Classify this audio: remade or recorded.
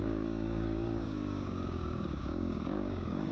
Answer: remade